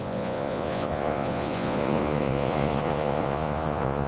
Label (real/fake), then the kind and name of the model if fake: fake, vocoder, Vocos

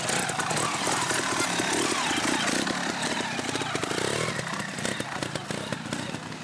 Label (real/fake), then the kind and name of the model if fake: real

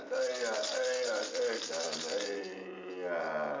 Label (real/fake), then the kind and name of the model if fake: real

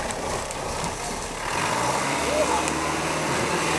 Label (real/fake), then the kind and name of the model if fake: real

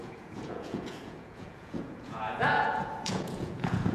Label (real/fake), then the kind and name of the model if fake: fake, vocoder, Vocos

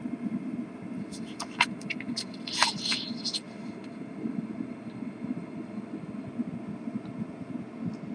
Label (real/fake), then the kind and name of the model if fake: real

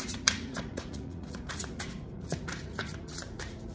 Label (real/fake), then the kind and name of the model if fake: fake, vocoder, Vocos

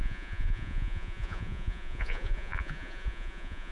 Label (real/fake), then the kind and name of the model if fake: fake, vocoder, Vocos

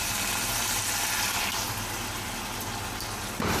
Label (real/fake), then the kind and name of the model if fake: real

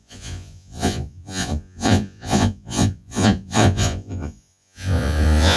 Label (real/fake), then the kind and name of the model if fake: fake, vocoder, Vocos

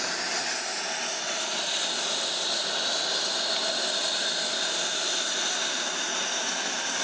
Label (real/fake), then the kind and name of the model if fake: real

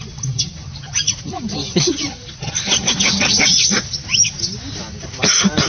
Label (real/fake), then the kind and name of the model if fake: real